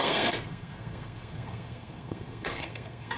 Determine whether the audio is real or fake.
fake